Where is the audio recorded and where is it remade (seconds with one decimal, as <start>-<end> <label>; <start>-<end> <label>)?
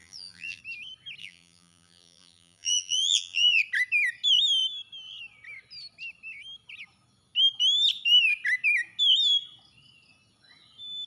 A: 0.0-0.6 remade; 0.6-1.2 recorded; 1.2-3.6 remade; 3.6-11.1 recorded